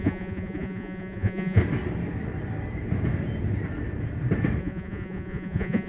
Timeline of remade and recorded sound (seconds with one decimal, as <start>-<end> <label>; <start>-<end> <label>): 0.0-1.6 remade; 1.6-4.6 recorded; 4.6-5.9 remade